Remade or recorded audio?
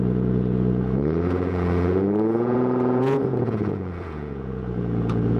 remade